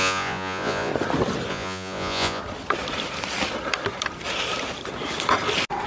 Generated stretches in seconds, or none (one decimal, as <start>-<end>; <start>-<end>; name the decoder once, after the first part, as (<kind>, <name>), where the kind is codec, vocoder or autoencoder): 0.0-0.9 (vocoder, Vocos); 1.5-2.4